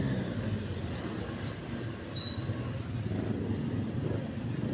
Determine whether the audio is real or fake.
real